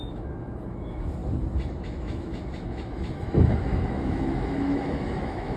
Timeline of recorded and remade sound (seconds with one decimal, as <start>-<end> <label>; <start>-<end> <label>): 0.0-1.2 remade; 1.2-1.8 recorded; 1.8-5.6 remade